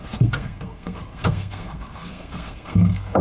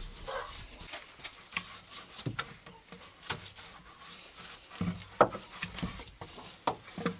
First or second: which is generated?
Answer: first